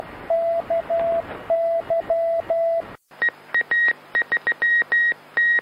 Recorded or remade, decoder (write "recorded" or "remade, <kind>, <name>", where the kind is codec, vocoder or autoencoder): recorded